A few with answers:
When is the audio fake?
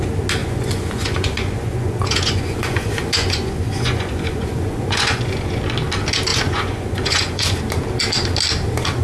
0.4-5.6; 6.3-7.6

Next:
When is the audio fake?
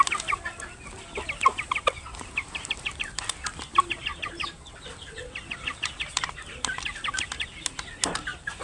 none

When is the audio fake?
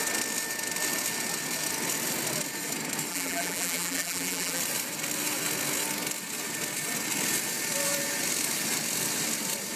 3.1-4.6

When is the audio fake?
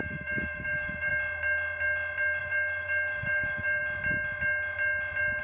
0.0-1.1; 2.4-3.8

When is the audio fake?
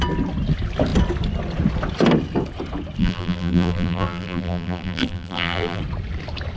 3.0-5.8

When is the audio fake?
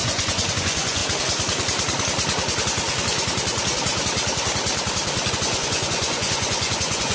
0.0-1.0; 5.3-7.1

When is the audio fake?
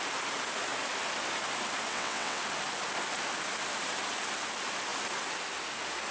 1.9-2.4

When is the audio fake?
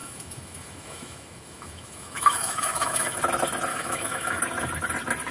0.0-3.2; 3.7-4.4